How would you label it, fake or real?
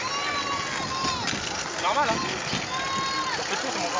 real